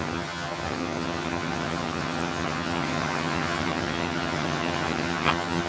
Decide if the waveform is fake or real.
fake